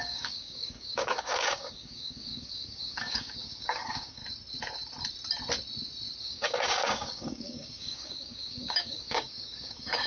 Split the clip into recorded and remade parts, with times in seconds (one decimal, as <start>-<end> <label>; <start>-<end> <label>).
0.0-4.2 remade; 4.2-6.2 recorded; 6.2-10.1 remade